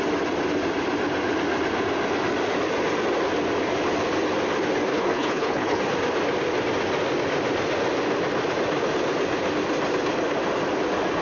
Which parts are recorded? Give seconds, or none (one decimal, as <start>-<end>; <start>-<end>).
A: 0.0-4.9; 5.8-11.2